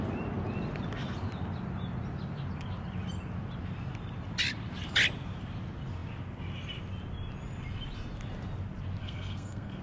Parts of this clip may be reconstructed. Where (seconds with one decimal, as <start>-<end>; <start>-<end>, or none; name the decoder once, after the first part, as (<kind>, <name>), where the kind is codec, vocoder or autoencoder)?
9.0-9.8 (codec, SNAC)